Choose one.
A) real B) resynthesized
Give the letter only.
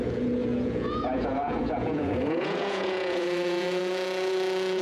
B